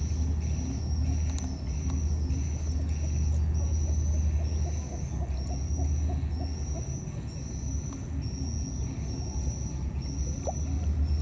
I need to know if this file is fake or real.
real